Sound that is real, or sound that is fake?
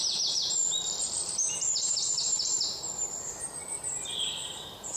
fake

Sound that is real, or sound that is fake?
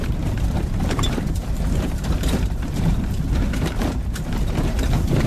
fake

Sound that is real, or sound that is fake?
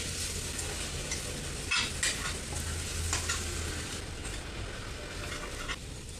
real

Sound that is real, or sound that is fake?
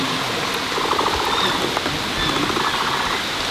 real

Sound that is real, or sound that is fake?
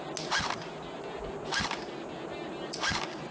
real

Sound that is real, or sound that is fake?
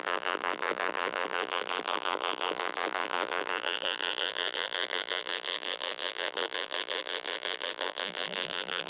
fake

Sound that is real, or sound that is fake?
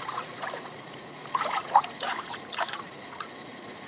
fake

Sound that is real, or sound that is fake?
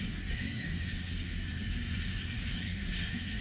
fake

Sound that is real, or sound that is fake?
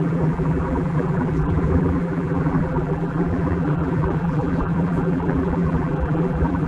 fake